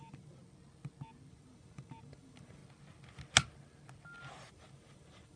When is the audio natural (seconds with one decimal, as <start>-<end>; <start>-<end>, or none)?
0.4-1.3; 2.6-4.5

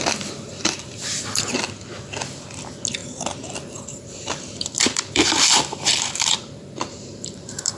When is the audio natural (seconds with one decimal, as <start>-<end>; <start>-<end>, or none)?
0.0-0.5; 1.6-3.0

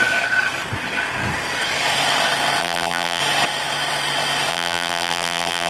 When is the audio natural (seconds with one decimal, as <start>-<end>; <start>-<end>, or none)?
0.0-2.6; 3.2-4.5

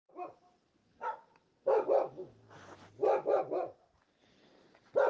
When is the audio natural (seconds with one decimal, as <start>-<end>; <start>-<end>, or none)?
0.0-5.1

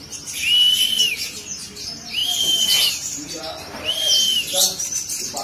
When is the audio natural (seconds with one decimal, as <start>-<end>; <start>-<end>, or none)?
0.0-2.2; 3.4-5.4

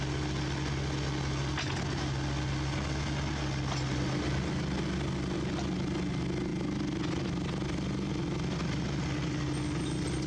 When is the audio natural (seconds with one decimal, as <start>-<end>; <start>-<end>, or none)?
0.0-10.3

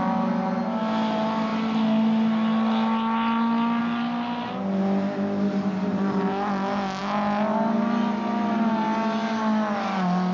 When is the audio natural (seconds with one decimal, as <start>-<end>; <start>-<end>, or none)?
0.0-10.3